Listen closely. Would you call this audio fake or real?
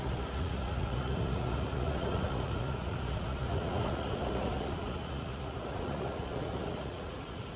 fake